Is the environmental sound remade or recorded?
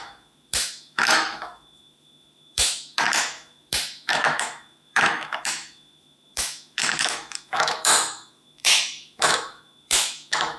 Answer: remade